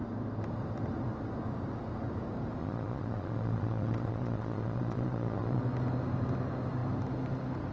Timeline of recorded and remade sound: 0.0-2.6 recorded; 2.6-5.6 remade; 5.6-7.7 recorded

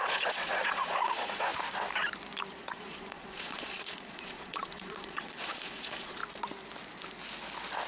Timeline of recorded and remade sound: 0.0-1.5 remade; 1.5-2.5 recorded; 2.5-6.2 remade; 6.2-7.9 recorded

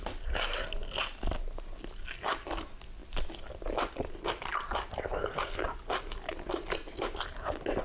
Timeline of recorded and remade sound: 0.0-7.8 recorded